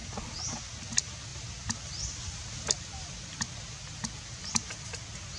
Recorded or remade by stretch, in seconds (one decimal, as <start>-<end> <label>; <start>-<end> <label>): 0.0-5.4 recorded